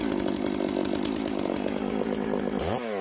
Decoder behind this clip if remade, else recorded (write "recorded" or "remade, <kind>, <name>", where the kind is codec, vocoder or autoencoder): recorded